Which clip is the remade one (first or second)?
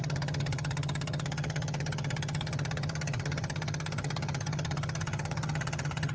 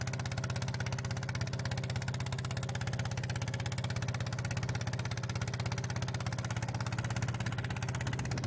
first